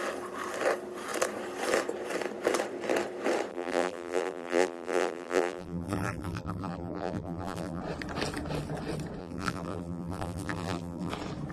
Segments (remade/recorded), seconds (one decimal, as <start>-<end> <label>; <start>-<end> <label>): 0.0-3.5 recorded; 3.5-7.8 remade; 7.8-9.2 recorded; 9.2-11.1 remade; 11.1-11.5 recorded